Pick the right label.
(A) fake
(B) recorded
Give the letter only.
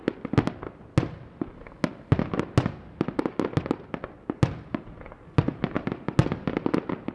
B